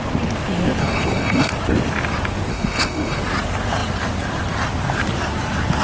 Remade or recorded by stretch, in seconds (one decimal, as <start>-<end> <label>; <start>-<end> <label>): 0.0-0.8 recorded; 0.8-1.5 remade; 1.5-2.5 recorded; 2.5-3.2 remade; 3.2-5.8 recorded